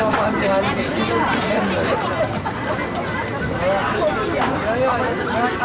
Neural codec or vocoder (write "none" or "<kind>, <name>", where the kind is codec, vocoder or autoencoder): none